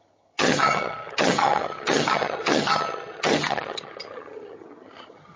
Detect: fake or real fake